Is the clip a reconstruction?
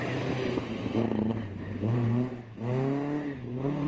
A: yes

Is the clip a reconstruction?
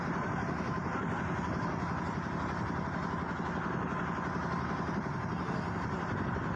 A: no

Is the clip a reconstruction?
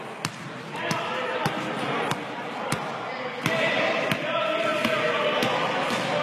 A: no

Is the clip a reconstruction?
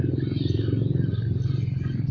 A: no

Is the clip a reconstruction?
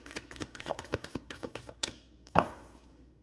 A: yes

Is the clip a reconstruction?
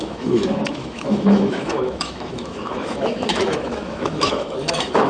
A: yes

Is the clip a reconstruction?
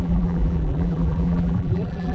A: yes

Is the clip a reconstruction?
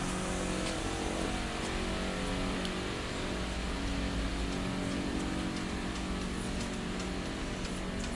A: no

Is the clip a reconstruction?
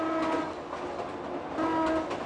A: no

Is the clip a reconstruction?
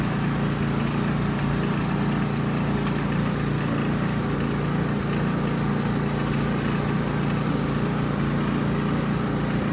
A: no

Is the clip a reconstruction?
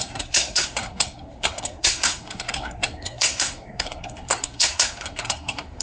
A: yes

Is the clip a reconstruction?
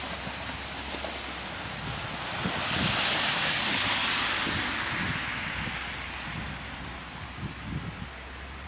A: no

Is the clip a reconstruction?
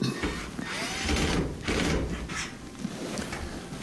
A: no